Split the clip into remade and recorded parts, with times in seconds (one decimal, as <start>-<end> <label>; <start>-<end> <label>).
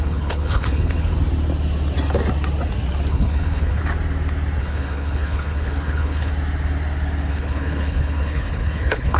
0.0-1.1 remade; 1.1-3.1 recorded; 3.1-3.8 remade; 3.8-4.6 recorded; 4.6-6.3 remade; 6.3-7.3 recorded; 7.3-9.2 remade